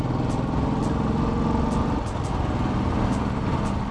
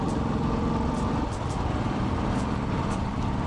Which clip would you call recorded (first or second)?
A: first